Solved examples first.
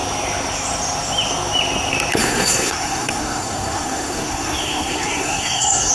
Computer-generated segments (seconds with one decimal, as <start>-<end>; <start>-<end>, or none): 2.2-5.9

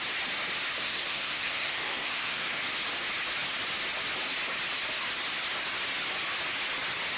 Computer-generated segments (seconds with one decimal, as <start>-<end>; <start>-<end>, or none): 0.8-2.6

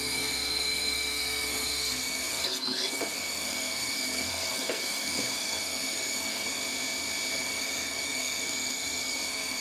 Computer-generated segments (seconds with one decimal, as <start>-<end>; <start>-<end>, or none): 0.0-6.6; 7.3-9.6